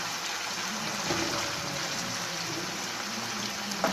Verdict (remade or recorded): recorded